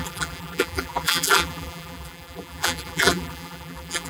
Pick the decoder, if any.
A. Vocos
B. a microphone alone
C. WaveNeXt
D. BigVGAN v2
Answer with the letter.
D